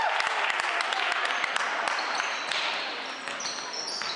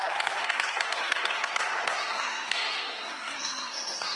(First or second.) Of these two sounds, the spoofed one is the second